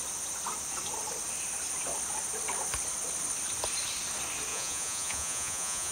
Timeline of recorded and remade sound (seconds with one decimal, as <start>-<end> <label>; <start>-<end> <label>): 0.0-4.5 recorded; 4.5-5.9 remade